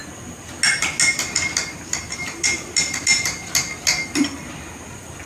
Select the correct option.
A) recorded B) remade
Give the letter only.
A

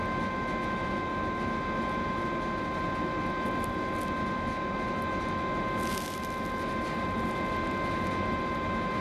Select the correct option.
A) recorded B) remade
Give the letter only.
A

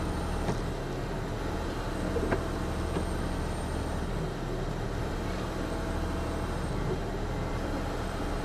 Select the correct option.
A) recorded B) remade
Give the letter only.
A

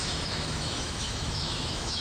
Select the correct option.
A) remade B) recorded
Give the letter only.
A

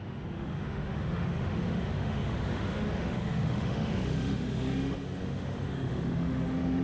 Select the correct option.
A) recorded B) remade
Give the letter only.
B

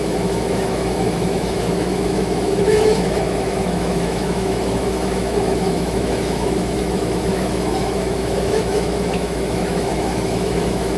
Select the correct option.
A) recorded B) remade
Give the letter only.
B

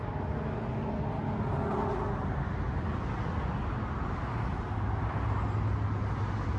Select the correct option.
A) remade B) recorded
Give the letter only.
B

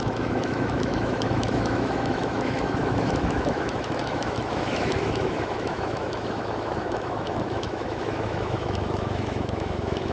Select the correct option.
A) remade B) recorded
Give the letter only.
A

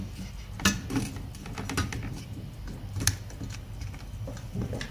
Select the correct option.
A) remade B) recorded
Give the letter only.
B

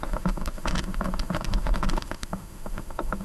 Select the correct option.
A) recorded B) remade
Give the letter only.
B